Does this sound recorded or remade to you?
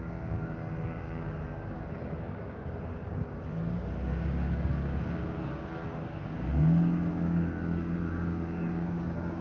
remade